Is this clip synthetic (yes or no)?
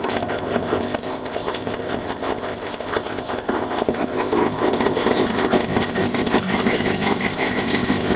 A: yes